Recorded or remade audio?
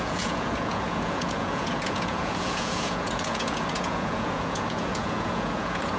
remade